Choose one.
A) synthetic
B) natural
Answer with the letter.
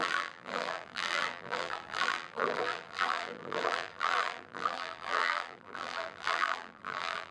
A